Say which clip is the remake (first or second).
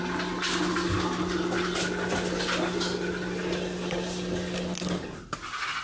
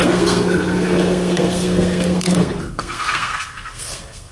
second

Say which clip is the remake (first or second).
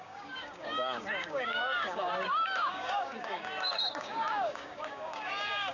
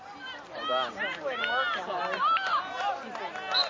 first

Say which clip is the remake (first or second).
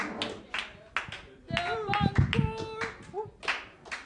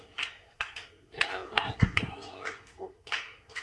second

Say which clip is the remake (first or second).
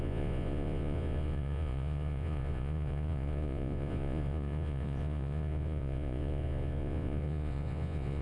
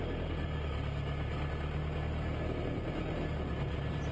first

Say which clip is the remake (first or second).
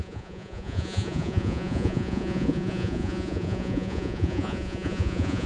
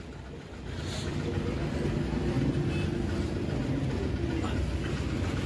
first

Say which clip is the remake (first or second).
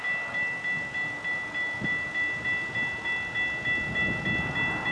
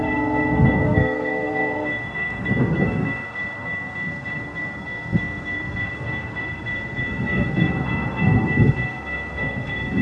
second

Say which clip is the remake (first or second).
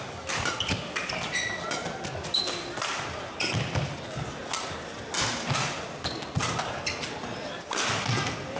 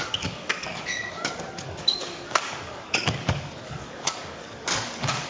second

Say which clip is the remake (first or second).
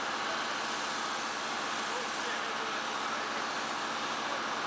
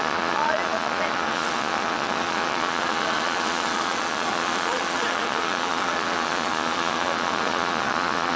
second